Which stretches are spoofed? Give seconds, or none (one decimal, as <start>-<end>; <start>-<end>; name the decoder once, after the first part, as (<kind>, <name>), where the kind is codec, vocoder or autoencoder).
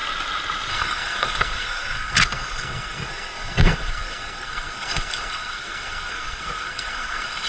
0.7-7.5 (codec, SNAC)